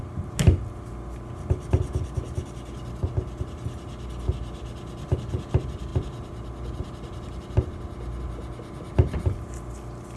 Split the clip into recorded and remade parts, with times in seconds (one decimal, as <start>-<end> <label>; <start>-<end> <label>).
0.0-10.2 recorded